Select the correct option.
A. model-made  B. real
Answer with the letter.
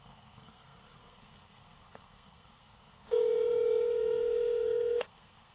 A